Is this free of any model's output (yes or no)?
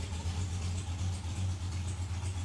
yes